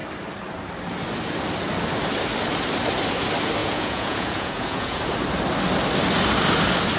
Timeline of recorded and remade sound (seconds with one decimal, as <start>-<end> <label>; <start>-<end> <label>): 0.0-3.6 recorded; 3.6-5.0 remade; 5.0-7.0 recorded